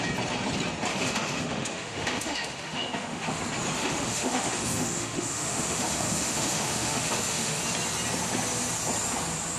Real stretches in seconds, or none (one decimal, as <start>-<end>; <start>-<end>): 0.0-0.9; 3.4-3.8; 7.6-9.6